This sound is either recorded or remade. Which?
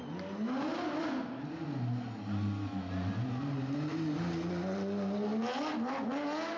recorded